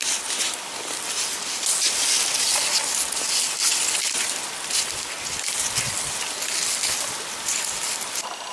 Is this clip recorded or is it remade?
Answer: recorded